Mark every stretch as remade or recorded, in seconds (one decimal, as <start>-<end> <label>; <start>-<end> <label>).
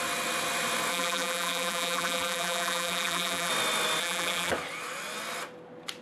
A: 0.0-0.9 recorded; 0.9-3.5 remade; 3.5-4.0 recorded; 4.0-4.5 remade; 4.5-6.0 recorded